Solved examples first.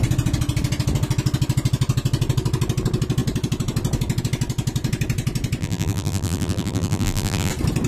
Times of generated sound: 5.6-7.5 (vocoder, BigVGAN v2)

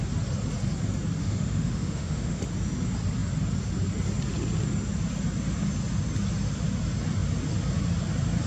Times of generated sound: 1.2-2.4 (autoencoder, DAC-VAE)

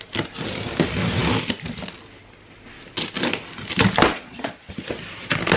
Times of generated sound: 4.1-4.7 (vocoder, Vocos)